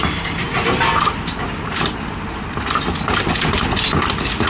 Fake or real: real